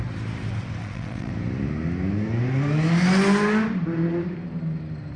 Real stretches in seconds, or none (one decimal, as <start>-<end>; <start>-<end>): 0.0-0.8; 1.3-5.2